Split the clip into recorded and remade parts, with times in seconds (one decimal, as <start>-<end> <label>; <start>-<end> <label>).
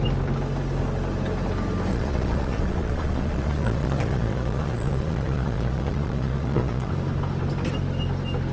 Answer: 0.0-1.9 recorded; 1.9-6.9 remade; 6.9-8.5 recorded